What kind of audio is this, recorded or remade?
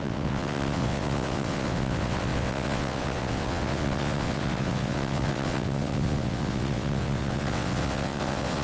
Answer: remade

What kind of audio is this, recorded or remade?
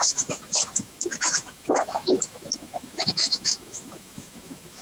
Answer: remade